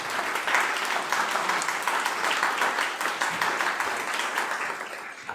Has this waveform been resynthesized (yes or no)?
no